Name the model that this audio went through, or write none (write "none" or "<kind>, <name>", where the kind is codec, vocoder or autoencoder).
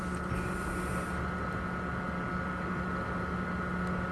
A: none